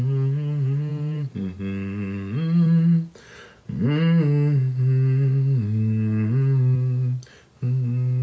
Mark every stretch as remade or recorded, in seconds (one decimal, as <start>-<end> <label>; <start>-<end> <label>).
0.0-0.9 recorded; 0.9-1.6 remade; 1.6-8.2 recorded